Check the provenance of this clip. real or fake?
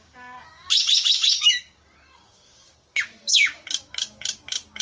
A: fake